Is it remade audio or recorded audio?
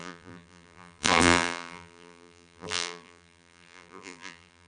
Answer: remade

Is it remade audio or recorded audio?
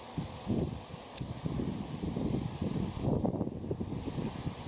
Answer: recorded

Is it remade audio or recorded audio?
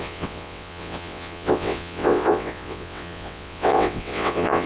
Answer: remade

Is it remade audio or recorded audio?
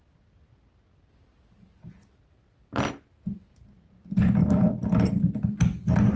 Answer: recorded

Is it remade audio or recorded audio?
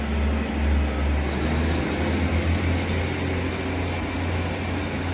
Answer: recorded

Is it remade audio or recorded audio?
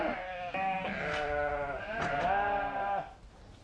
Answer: recorded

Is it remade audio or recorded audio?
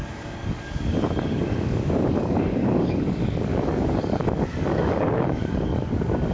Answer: remade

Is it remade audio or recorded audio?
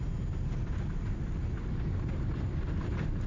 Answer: recorded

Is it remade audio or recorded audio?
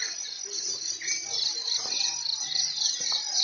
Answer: recorded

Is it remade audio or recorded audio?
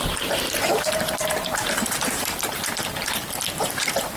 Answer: remade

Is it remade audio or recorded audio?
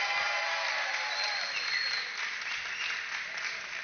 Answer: recorded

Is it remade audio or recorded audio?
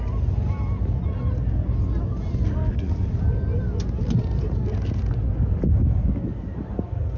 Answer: recorded